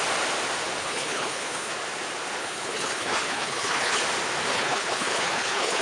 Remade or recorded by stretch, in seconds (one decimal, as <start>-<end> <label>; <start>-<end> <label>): 0.0-0.8 recorded; 0.8-1.7 remade; 1.7-2.4 recorded; 2.4-4.0 remade; 4.0-4.5 recorded; 4.5-5.8 remade